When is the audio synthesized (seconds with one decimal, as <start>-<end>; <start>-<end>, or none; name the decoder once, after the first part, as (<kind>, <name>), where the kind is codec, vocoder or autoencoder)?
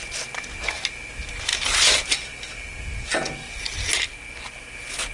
none